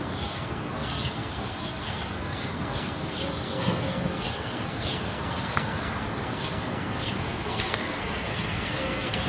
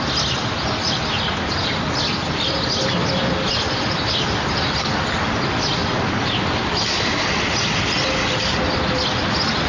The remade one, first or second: first